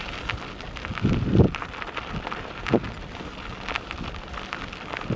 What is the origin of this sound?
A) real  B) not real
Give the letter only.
A